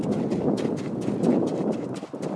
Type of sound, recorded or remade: recorded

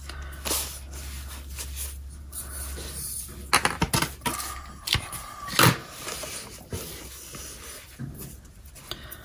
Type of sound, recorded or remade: recorded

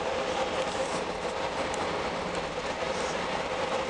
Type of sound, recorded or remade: recorded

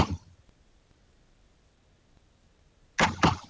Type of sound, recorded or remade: recorded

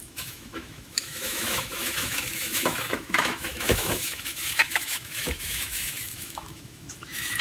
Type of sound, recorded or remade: remade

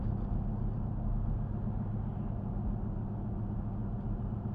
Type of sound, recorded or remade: recorded